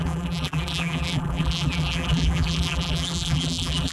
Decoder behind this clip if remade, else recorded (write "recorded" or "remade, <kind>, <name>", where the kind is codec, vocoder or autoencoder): remade, vocoder, BigVGAN v2